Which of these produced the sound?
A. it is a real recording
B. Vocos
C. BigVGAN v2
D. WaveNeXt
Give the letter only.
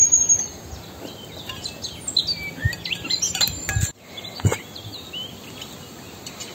A